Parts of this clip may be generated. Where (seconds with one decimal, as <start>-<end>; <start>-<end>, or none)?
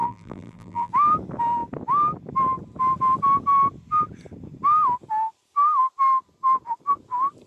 0.0-0.9